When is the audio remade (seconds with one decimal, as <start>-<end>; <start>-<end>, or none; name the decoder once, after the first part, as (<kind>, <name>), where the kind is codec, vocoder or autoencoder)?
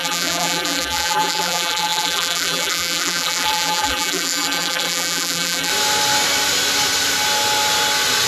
0.0-5.7 (vocoder, BigVGAN v2)